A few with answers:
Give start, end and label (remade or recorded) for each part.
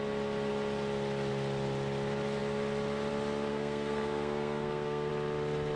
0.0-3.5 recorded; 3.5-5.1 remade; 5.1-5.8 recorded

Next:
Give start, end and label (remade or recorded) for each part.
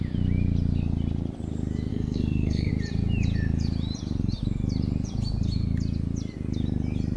0.0-1.9 recorded; 1.9-2.7 remade; 2.7-7.2 recorded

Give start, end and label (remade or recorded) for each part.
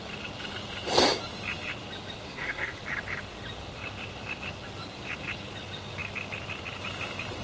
0.0-2.2 recorded; 2.2-2.8 remade; 2.8-7.4 recorded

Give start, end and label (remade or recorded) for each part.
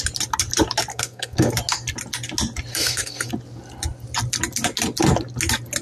0.0-0.9 recorded; 0.9-1.5 remade; 1.5-2.7 recorded; 2.7-3.3 remade; 3.3-5.8 recorded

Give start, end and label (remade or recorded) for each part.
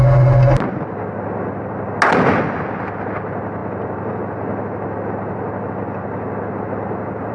0.0-7.3 recorded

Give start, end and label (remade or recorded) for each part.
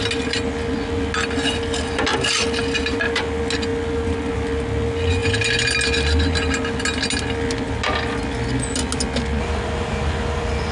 0.0-10.7 recorded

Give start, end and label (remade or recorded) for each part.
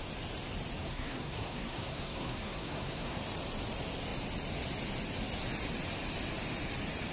0.0-0.8 recorded; 0.8-3.2 remade; 3.2-7.1 recorded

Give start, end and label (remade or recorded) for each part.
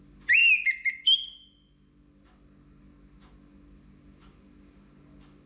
0.0-5.5 recorded